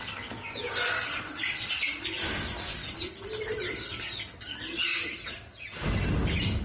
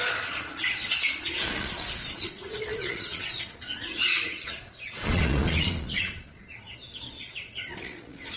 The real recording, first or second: first